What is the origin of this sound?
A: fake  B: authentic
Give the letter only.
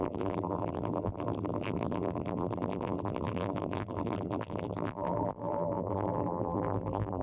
A